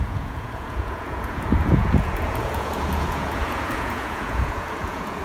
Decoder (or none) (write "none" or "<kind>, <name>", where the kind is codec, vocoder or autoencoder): vocoder, Vocos